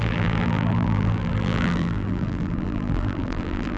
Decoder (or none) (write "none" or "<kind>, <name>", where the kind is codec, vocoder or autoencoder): vocoder, BigVGAN v2